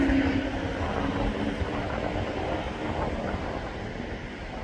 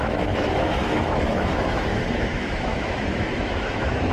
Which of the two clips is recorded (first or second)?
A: first